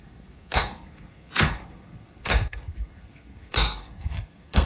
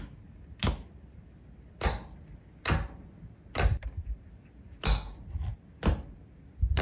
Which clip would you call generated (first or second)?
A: first